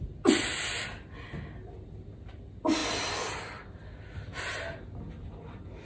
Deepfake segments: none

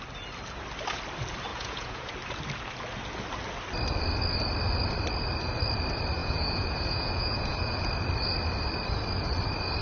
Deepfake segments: 1.5-2.1 (vocoder, Vocos); 6.2-7.9

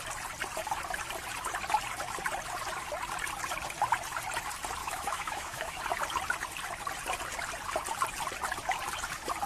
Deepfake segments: 4.8-5.8 (autoencoder, DAC-VAE)

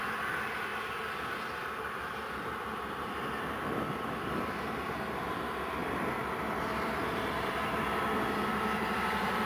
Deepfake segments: 0.7-1.4 (vocoder, BigVGAN v2); 5.8-9.5

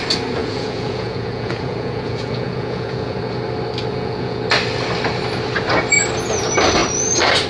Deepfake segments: 0.4-3.2 (vocoder, Vocos); 3.9-4.4

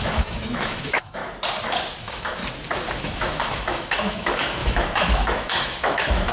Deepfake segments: 0.0-1.2 (autoencoder, DAC-VAE); 2.0-2.4; 3.0-6.3

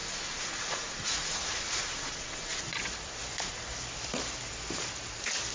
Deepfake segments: 0.0-2.6 (vocoder, Vocos)